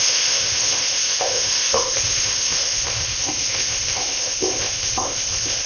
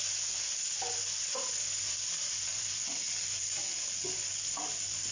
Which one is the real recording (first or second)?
second